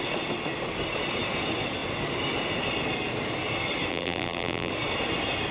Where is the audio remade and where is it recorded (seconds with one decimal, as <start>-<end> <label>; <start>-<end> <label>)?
0.0-3.9 recorded; 3.9-4.7 remade; 4.7-5.5 recorded